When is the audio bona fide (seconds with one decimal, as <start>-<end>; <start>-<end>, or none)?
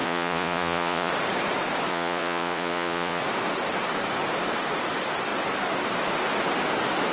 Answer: 1.1-1.9; 3.2-7.1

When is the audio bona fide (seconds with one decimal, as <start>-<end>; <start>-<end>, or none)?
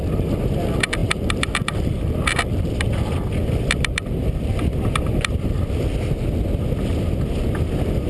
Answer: 0.0-1.0; 5.3-8.1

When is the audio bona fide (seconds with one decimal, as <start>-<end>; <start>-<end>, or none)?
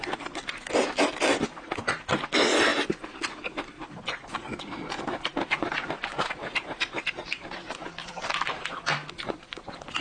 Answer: 2.7-7.1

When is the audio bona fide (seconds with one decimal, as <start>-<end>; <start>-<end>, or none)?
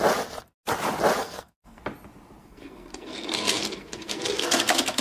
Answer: 0.0-1.2; 1.8-2.4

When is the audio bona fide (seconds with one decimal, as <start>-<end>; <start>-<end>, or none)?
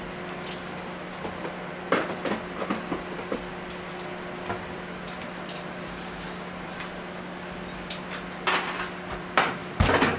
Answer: 0.0-10.2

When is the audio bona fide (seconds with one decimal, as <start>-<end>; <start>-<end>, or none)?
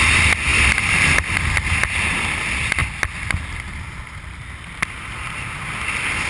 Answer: 0.0-6.3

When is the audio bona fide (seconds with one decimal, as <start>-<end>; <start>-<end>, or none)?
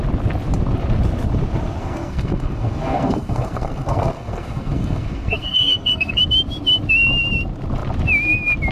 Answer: 0.0-1.8; 6.2-8.7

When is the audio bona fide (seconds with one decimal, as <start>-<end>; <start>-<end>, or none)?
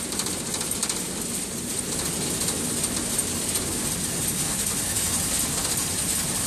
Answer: 0.0-6.5